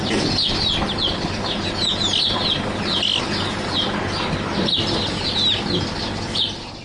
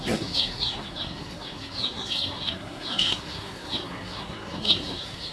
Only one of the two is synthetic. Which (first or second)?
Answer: second